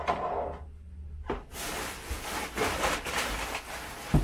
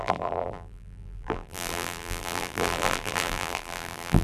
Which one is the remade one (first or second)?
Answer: second